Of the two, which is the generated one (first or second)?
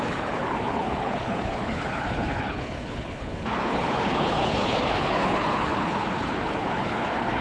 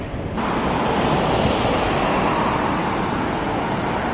first